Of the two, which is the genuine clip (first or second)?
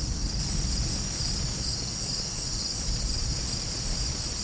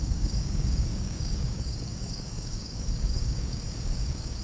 first